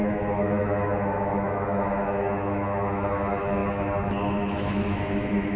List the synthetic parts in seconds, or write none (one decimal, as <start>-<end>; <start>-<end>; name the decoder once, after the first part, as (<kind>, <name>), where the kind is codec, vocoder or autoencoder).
0.0-5.6 (autoencoder, DAC-VAE)